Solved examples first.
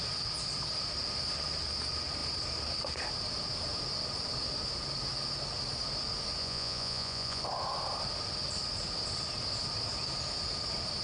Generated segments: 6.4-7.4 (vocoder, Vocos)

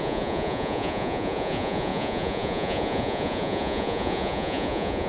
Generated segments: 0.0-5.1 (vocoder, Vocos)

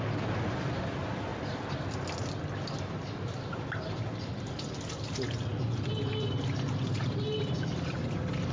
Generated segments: none

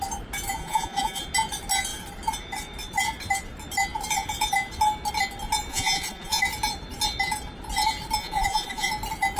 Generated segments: 0.6-1.2 (vocoder, Vocos); 5.7-6.4; 8.2-8.9